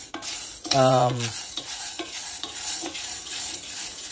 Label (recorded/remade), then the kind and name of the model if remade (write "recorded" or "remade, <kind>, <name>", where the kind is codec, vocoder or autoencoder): remade, vocoder, Vocos